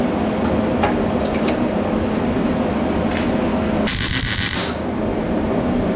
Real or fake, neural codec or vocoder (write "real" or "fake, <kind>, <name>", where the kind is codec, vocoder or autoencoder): real